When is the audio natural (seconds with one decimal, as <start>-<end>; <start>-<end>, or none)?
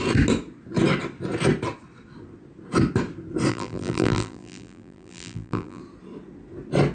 0.0-3.5; 5.8-6.9